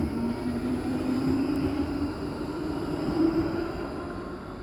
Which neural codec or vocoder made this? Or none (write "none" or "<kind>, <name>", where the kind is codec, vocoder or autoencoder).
vocoder, BigVGAN v2